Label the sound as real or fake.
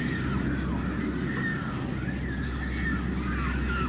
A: real